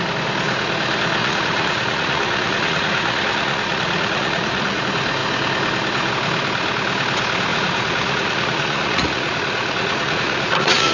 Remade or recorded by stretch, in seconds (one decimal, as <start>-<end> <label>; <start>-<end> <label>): 0.0-1.2 recorded; 1.2-4.8 remade; 4.8-7.5 recorded; 7.5-10.9 remade